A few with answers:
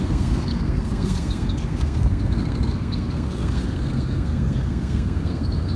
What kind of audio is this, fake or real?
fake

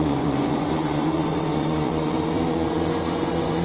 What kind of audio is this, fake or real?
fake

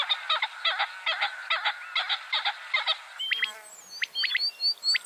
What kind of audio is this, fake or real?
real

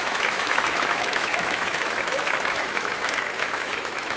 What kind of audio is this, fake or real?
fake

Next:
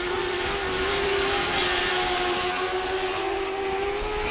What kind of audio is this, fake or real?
real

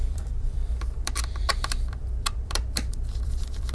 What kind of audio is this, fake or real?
fake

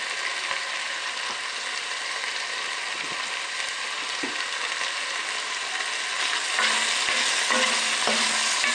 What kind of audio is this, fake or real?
real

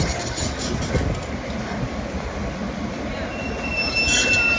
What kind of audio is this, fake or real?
real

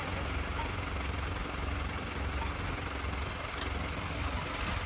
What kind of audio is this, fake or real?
real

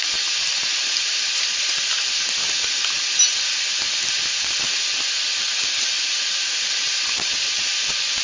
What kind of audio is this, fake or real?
real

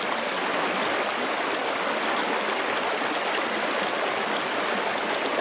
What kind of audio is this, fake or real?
real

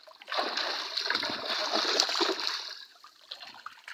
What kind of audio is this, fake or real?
real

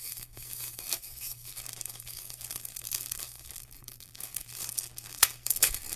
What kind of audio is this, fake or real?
fake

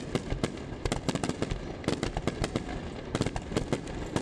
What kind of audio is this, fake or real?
real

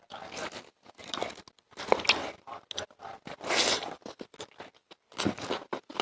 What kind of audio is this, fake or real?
real